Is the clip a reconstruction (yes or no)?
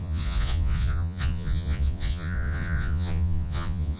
yes